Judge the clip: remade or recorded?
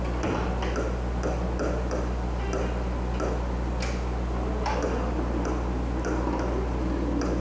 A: recorded